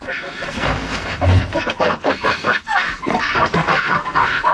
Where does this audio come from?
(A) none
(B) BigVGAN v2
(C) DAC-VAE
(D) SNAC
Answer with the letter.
D